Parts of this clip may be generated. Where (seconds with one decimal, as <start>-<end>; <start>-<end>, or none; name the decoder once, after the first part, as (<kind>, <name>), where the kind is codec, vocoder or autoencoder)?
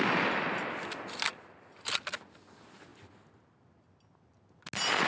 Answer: 1.3-1.8 (vocoder, BigVGAN v2)